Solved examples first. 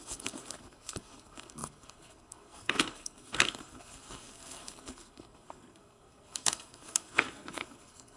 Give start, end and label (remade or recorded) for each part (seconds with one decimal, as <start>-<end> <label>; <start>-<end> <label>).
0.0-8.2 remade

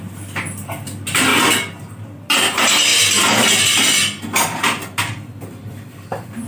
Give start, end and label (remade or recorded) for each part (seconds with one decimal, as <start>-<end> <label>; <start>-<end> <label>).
0.0-6.5 recorded

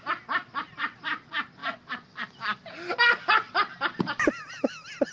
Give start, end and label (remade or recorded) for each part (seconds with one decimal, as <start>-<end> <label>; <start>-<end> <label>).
0.0-5.1 recorded

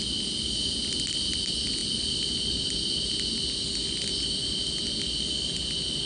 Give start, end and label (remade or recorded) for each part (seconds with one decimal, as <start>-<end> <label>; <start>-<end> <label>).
0.0-6.1 recorded

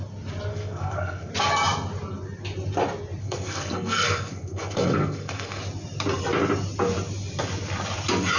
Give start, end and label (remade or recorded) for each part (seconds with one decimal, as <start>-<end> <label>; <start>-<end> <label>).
0.0-0.5 recorded; 0.5-1.3 remade; 1.3-3.2 recorded; 3.2-5.6 remade; 5.6-8.4 recorded

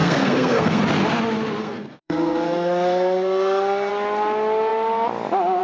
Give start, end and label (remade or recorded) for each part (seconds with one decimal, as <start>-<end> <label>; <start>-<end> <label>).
0.0-0.8 remade; 0.8-1.6 recorded; 1.6-3.9 remade; 3.9-5.6 recorded